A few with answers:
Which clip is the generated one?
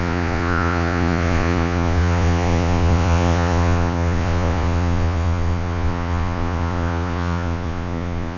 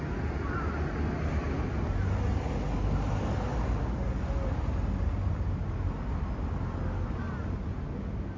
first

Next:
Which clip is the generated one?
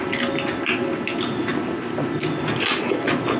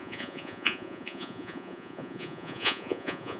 second